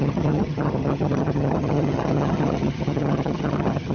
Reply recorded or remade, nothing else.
remade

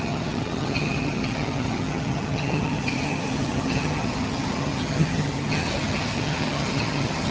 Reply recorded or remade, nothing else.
remade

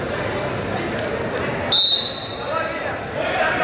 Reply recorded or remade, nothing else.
recorded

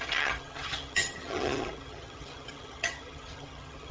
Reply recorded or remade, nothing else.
remade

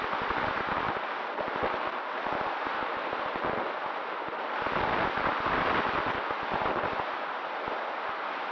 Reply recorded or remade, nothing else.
recorded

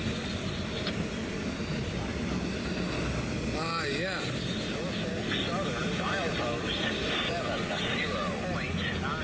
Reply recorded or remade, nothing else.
recorded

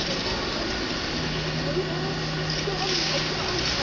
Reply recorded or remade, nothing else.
recorded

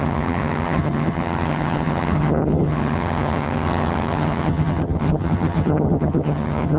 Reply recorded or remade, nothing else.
remade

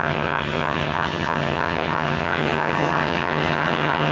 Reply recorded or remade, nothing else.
remade